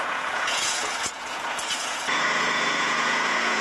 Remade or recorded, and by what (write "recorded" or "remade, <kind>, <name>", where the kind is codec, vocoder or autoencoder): remade, vocoder, Vocos